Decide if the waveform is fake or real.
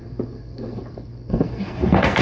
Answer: fake